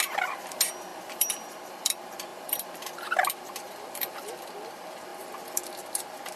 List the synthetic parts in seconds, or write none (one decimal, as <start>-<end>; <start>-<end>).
0.0-6.4